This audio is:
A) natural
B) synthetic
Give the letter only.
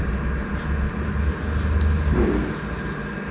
A